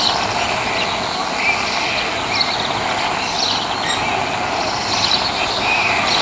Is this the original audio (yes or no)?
yes